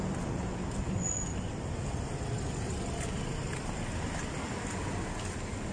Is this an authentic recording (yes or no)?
yes